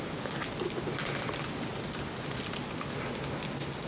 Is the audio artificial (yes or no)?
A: no